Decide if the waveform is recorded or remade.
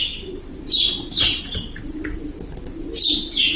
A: recorded